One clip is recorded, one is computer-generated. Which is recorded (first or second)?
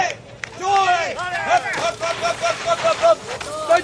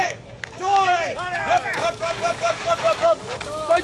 first